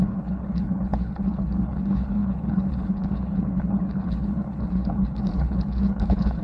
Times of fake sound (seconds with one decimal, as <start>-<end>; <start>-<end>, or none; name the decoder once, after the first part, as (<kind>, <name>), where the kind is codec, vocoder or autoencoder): 0.0-6.4 (codec, HILCodec)